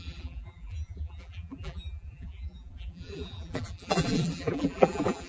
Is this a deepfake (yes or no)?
yes